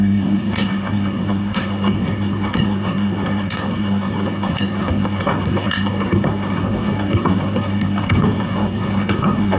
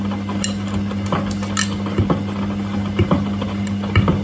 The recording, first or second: second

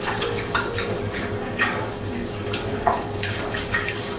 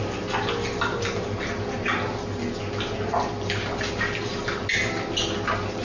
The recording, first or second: second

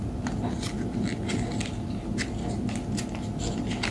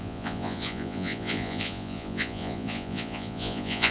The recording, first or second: first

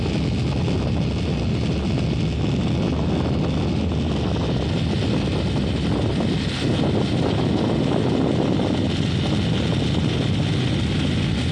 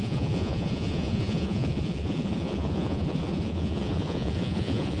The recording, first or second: first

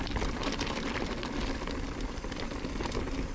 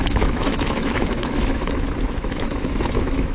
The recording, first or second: first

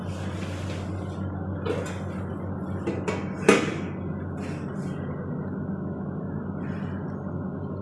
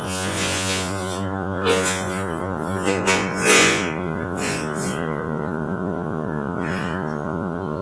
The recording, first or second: first